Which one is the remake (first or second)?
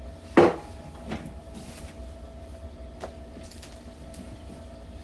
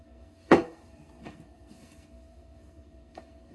second